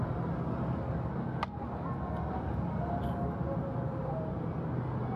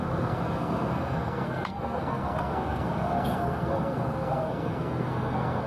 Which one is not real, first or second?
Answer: second